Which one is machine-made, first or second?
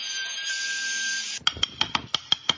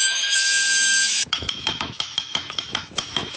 second